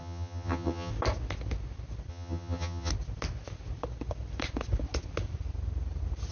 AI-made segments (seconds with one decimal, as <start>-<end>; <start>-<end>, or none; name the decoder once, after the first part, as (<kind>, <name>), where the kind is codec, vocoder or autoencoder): 0.0-0.9 (vocoder, HiFi-GAN); 2.1-2.9